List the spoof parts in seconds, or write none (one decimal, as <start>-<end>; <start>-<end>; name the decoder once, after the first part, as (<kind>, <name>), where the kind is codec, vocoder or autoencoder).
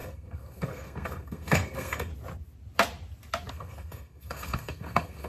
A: 0.0-2.1 (codec, SNAC); 3.5-5.3